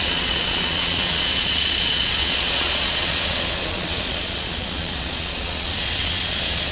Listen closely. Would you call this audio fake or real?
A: fake